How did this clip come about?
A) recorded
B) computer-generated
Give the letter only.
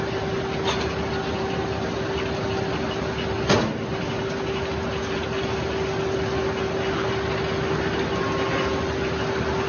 A